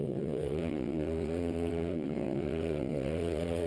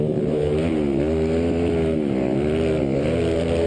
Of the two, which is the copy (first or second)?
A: first